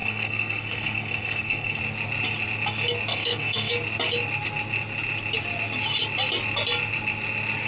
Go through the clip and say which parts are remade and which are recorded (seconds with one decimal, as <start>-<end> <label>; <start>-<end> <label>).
0.0-1.8 remade; 1.8-3.1 recorded; 3.1-3.7 remade; 3.7-7.7 recorded